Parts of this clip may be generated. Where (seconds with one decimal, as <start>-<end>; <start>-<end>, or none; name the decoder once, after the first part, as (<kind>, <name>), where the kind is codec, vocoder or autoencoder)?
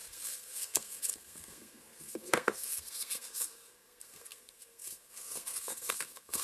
0.0-6.4 (codec, SNAC)